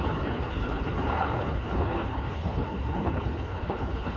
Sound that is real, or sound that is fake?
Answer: fake